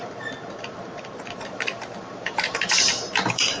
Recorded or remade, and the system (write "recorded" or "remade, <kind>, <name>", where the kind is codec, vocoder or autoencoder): remade, vocoder, BigVGAN v2